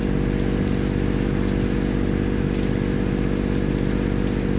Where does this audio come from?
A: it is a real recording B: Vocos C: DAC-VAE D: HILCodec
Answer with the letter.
A